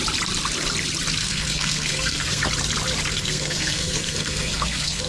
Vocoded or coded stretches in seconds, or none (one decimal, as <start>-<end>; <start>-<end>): 1.2-2.4; 3.1-5.1